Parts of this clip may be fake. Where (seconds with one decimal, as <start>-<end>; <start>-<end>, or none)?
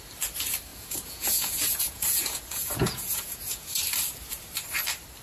0.7-3.8